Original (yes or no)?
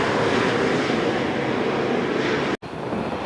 yes